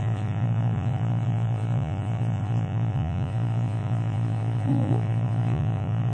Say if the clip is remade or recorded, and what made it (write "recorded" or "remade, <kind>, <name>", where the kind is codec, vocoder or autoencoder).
remade, vocoder, Vocos